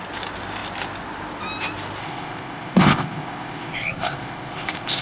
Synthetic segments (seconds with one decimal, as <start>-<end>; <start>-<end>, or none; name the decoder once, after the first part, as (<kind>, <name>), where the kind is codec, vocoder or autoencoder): 2.0-5.0 (codec, ZipCodec)